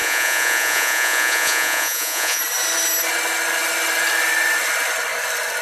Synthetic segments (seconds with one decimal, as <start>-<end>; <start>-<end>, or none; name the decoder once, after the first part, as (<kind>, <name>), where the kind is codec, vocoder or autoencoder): 0.0-2.4 (vocoder, Vocos)